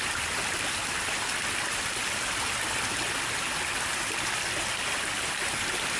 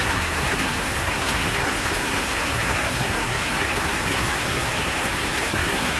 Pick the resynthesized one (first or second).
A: second